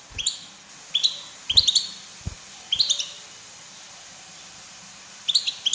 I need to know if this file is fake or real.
real